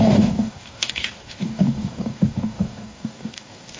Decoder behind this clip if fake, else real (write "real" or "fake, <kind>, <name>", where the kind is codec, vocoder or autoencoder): fake, codec, DAC